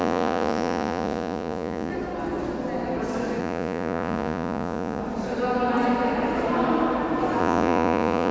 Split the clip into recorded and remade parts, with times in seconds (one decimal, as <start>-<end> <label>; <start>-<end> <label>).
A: 0.0-1.9 remade; 1.9-3.4 recorded; 3.4-5.0 remade; 5.0-7.4 recorded; 7.4-8.3 remade